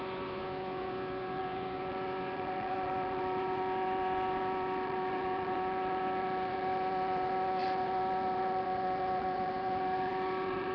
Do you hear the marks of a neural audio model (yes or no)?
yes